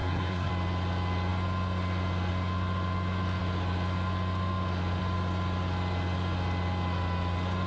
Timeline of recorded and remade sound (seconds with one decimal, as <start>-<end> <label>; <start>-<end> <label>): 0.0-0.5 remade; 0.5-7.7 recorded